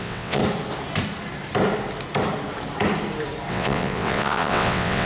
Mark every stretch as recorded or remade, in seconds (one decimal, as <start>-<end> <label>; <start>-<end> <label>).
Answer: 0.0-0.4 remade; 0.4-3.5 recorded; 3.5-5.1 remade